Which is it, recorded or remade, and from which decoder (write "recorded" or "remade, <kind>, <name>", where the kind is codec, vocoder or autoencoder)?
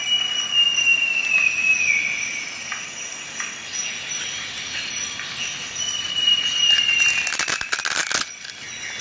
recorded